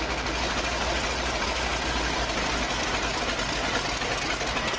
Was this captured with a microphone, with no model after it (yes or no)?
yes